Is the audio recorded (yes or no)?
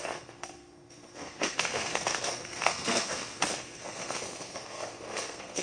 no